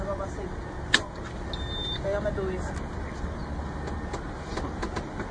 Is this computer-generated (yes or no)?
no